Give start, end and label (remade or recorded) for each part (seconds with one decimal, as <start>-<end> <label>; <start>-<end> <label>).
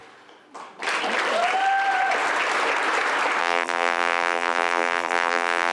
0.0-3.4 recorded; 3.4-5.7 remade